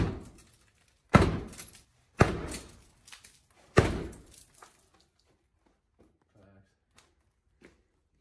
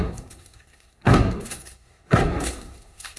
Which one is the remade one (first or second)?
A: second